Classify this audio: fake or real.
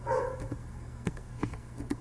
fake